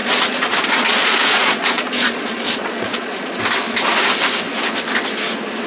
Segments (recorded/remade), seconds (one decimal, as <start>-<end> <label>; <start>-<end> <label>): 0.0-3.4 remade; 3.4-5.7 recorded